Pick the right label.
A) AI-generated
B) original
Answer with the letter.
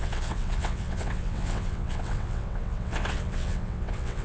A